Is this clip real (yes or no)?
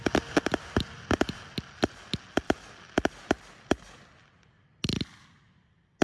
yes